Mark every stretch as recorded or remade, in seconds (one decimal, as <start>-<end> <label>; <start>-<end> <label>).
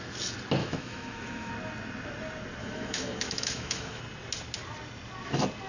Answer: 0.0-0.6 recorded; 0.6-1.5 remade; 1.5-2.6 recorded; 2.6-4.0 remade; 4.0-5.7 recorded